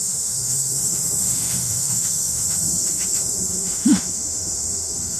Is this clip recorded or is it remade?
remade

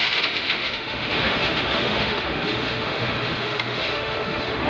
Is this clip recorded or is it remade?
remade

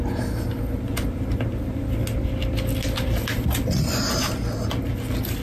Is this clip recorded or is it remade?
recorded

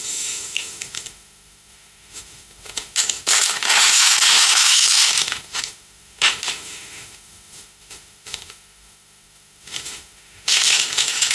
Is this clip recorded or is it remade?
remade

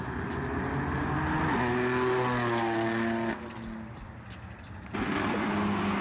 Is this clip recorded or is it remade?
recorded